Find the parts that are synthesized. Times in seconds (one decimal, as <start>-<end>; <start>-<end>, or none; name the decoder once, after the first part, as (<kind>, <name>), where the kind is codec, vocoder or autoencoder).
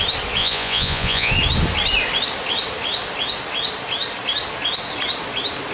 0.4-1.3 (vocoder, Vocos)